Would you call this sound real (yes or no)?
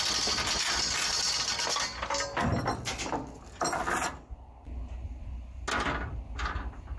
yes